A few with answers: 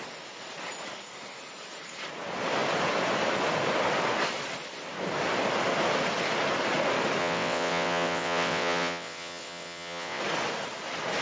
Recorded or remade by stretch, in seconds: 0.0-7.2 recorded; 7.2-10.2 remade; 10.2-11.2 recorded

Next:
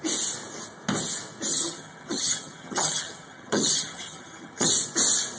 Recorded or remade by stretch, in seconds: 0.0-1.5 recorded; 1.5-4.7 remade; 4.7-5.4 recorded

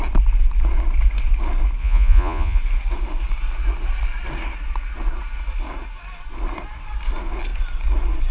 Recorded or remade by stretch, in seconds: 0.0-1.8 recorded; 1.8-2.6 remade; 2.6-8.3 recorded

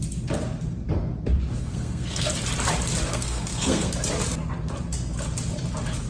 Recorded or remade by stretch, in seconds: 0.0-1.6 recorded; 1.6-2.3 remade; 2.3-3.1 recorded; 3.1-3.9 remade; 3.9-6.1 recorded

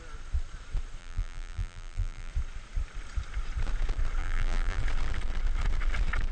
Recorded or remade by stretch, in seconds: 0.0-1.0 recorded; 1.0-2.3 remade; 2.3-4.2 recorded; 4.2-4.8 remade; 4.8-6.3 recorded

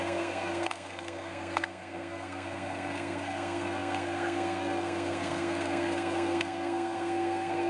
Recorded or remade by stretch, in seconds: 0.0-7.7 remade

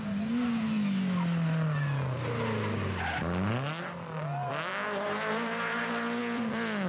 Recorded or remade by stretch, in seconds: 0.0-6.2 recorded; 6.2-6.9 remade